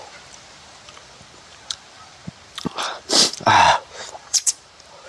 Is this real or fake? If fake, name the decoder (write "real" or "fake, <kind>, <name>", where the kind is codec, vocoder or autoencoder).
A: fake, vocoder, BigVGAN v2